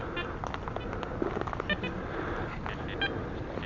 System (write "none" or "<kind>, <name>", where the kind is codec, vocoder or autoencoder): none